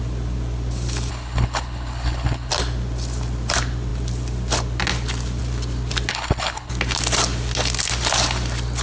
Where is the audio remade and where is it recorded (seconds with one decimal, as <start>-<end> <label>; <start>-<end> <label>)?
0.0-1.1 recorded; 1.1-2.5 remade; 2.5-6.1 recorded; 6.1-6.7 remade; 6.7-8.8 recorded